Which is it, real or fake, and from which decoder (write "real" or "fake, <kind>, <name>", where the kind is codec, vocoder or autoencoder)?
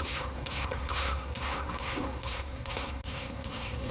fake, codec, SNAC